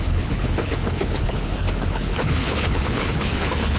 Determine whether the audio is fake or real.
fake